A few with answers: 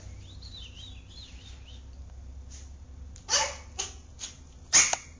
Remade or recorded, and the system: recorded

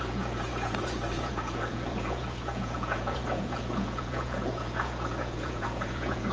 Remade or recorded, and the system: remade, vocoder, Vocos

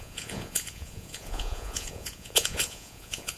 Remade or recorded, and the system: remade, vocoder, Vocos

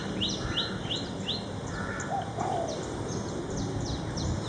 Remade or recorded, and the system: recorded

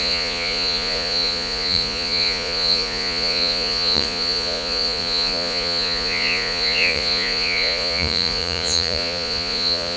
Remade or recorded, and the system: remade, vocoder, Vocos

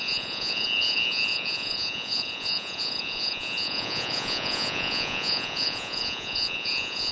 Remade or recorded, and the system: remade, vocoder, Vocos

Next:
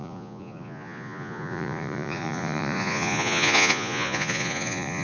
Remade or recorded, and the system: remade, vocoder, Vocos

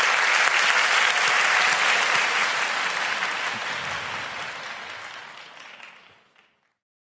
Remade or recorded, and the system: recorded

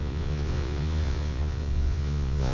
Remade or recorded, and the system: remade, vocoder, Vocos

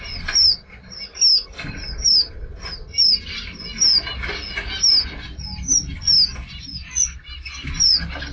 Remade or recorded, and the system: recorded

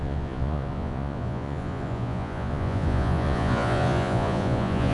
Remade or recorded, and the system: remade, vocoder, Vocos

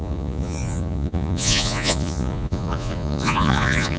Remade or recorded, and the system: remade, vocoder, Vocos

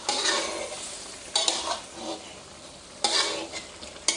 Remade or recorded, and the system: recorded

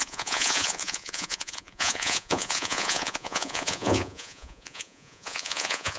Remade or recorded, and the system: remade, vocoder, Vocos